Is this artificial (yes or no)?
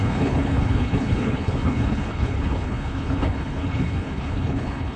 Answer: yes